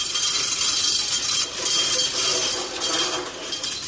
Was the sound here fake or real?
real